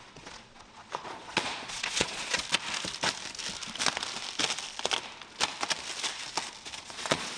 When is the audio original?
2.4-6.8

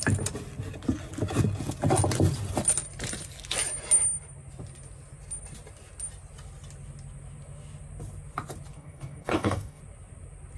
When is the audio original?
0.0-8.7; 9.8-10.6

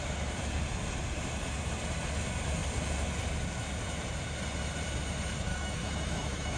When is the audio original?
0.0-5.5

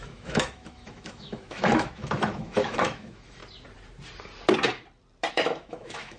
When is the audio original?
3.4-5.3

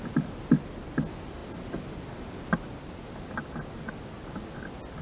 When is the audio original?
0.0-5.0

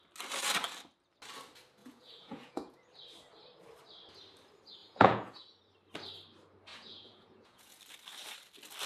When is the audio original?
0.0-1.8; 2.9-4.8; 5.6-6.7; 7.8-8.9

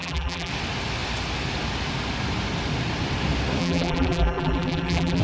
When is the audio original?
0.5-3.6

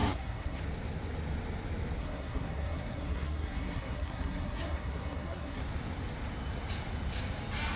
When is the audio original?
0.6-2.0; 5.6-7.8